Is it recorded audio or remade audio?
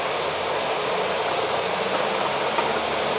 recorded